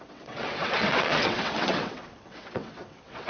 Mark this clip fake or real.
fake